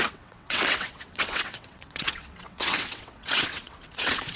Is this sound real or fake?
fake